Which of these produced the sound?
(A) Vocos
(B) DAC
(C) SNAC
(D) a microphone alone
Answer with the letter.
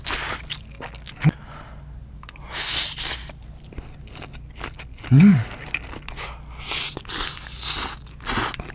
D